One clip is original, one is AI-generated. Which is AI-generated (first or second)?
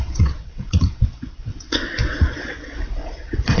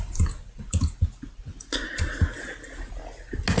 first